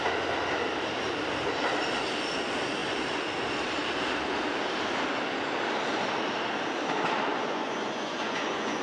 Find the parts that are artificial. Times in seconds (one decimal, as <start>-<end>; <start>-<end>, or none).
7.3-8.8